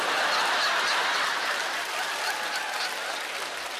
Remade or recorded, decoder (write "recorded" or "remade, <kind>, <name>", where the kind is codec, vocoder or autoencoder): recorded